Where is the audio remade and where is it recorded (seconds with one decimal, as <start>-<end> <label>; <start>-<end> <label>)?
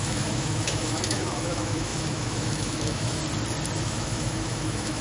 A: 0.0-3.2 remade; 3.2-3.8 recorded; 3.8-5.0 remade